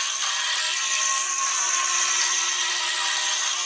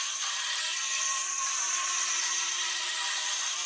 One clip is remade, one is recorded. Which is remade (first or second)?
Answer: second